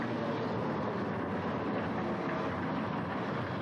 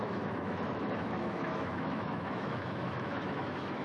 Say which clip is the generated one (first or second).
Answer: second